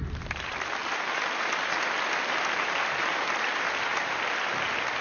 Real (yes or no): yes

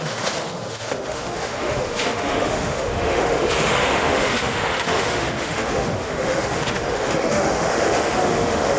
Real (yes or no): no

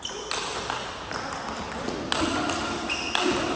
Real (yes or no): yes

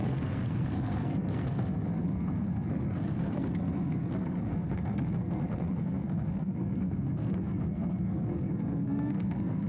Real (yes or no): no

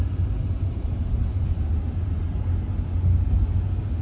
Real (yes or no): yes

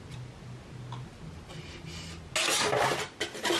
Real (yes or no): yes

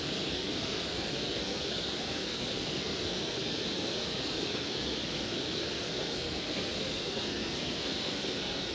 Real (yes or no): no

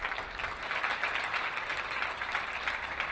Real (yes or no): yes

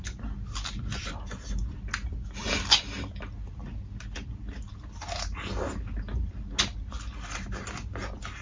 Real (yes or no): yes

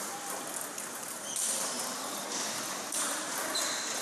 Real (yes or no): yes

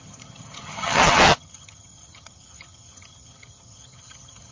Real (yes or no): no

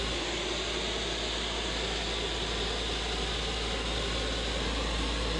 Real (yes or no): yes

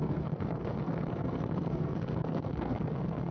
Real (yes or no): no